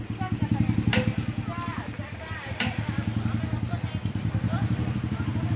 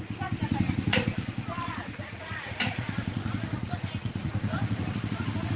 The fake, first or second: second